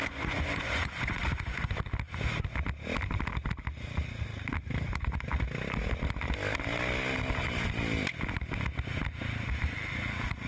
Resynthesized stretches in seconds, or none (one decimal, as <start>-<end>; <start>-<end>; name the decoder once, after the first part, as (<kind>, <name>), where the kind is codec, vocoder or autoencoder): 0.0-1.7 (vocoder, Vocos)